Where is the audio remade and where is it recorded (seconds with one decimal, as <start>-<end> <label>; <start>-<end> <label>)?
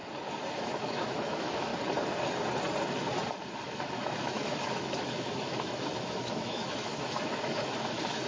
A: 0.0-0.5 recorded; 0.5-1.7 remade; 1.7-3.6 recorded; 3.6-8.3 remade